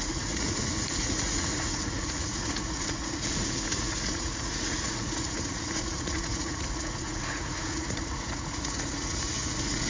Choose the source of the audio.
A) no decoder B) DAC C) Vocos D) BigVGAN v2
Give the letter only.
C